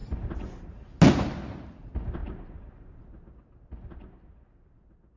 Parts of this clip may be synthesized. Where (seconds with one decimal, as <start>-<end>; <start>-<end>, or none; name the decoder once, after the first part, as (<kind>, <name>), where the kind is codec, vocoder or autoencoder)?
0.0-1.0 (vocoder, BigVGAN v2); 2.2-2.9